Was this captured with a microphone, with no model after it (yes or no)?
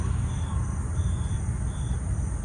yes